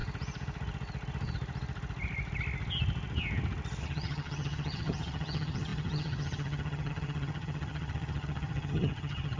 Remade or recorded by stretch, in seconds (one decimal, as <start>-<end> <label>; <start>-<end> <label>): 0.0-3.8 recorded; 3.8-9.4 remade